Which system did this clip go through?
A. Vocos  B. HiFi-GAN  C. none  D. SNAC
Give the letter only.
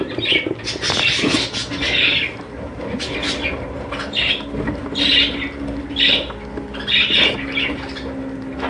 C